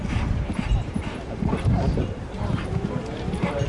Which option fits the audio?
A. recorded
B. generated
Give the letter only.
B